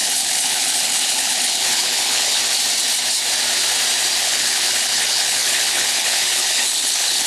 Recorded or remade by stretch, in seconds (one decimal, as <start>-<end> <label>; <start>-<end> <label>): 0.0-2.4 remade; 2.4-4.2 recorded; 4.2-7.3 remade